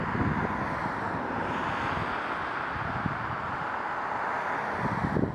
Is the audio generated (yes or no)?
no